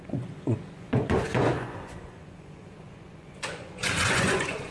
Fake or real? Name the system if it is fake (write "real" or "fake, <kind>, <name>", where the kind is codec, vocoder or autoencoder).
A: fake, vocoder, Vocos